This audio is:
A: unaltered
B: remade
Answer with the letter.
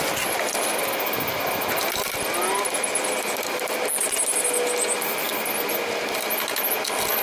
A